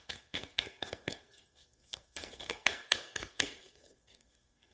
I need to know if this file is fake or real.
fake